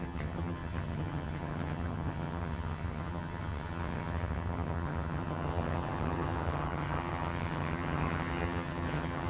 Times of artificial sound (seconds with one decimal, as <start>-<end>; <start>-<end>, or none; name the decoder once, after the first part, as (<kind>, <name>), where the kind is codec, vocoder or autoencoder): 0.0-9.3 (vocoder, HiFi-GAN)